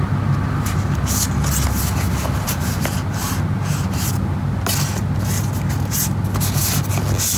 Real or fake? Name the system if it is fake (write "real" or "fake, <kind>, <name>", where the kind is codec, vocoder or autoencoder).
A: real